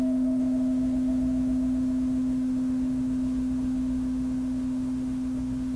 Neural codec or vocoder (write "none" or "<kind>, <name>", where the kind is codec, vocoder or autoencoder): autoencoder, DAC-VAE